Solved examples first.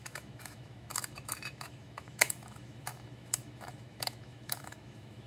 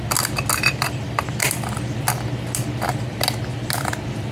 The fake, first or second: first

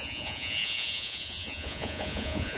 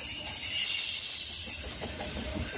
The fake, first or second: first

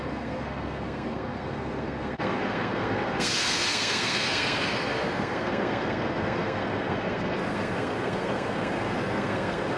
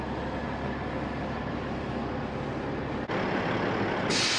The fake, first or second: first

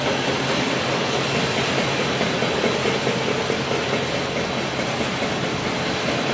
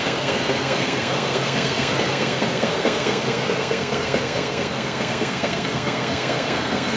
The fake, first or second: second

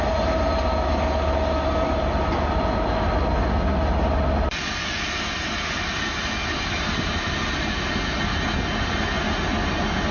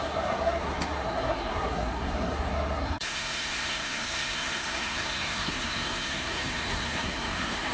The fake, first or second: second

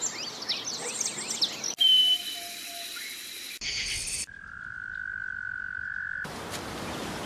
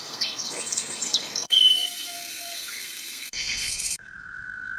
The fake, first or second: second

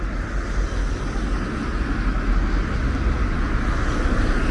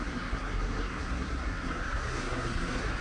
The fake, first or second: second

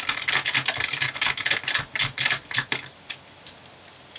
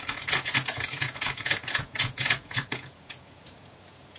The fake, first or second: second